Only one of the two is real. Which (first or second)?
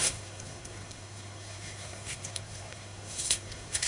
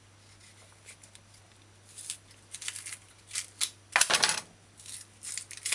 second